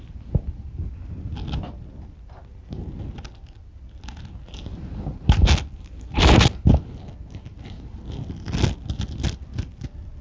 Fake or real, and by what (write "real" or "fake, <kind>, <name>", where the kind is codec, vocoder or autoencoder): real